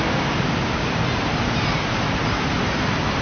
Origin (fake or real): real